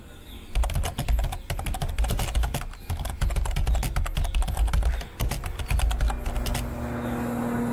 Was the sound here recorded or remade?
recorded